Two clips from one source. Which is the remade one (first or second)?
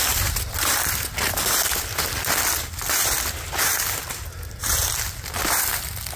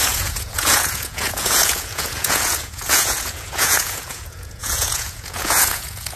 second